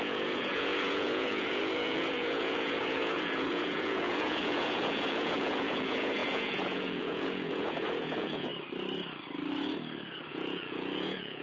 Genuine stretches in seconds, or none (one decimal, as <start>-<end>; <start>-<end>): 8.5-10.3